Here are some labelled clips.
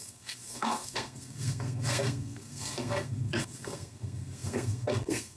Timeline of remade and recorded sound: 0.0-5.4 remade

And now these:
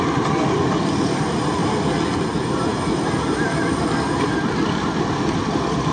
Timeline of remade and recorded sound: 0.0-1.6 remade; 1.6-2.2 recorded; 2.2-5.9 remade

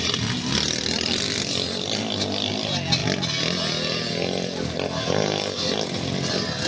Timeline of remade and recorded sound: 0.0-6.7 recorded

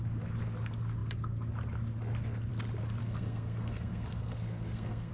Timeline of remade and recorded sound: 0.0-3.0 recorded; 3.0-5.1 remade

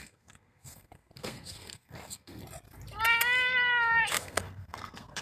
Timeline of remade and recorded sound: 0.0-2.4 remade; 2.4-4.1 recorded; 4.1-5.2 remade